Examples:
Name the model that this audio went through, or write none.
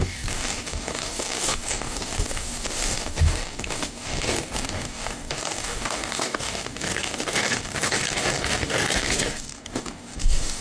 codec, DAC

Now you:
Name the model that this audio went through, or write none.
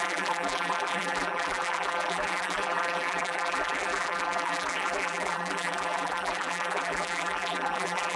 vocoder, BigVGAN v2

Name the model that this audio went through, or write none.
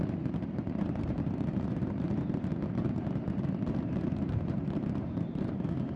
vocoder, BigVGAN v2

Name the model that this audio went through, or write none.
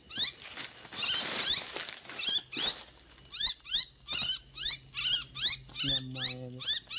none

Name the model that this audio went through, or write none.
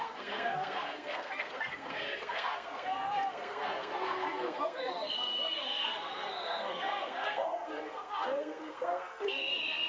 codec, SNAC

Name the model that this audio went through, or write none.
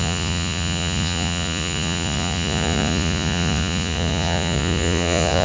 vocoder, Vocos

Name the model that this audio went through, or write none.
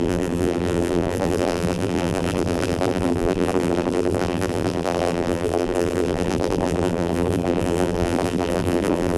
vocoder, BigVGAN v2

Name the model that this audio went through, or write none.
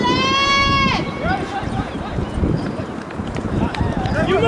vocoder, BigVGAN v2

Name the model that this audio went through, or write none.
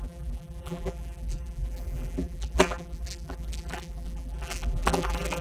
vocoder, BigVGAN v2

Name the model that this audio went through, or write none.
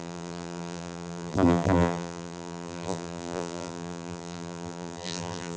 vocoder, BigVGAN v2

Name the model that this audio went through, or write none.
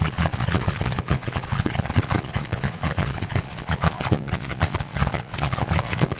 vocoder, Vocos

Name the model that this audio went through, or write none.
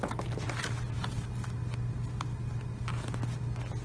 none